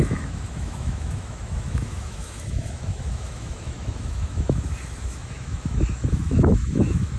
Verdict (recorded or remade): remade